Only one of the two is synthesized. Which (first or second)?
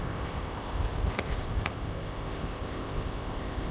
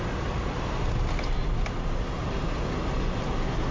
first